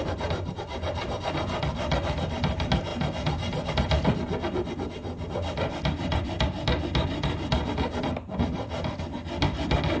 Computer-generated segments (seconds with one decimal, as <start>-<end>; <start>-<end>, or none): none

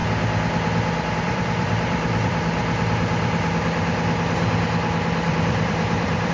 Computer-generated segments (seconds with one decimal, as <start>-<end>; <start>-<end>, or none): 1.1-2.6; 5.3-6.3

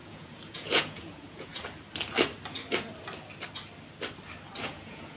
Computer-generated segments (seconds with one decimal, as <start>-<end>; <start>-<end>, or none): 0.0-1.5; 4.6-5.2

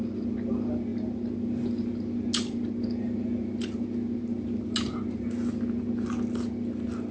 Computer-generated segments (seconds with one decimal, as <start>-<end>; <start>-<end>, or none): none

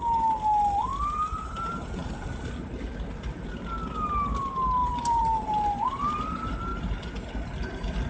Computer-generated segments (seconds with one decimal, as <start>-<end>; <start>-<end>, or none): 0.9-2.5; 4.8-6.2

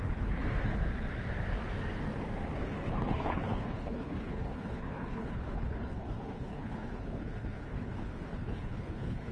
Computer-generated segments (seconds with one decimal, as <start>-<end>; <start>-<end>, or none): 0.0-0.4; 2.6-9.3

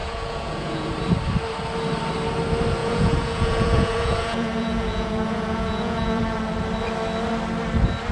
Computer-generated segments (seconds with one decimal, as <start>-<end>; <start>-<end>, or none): 0.0-0.9; 2.8-6.2